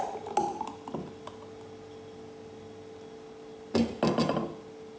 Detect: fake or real real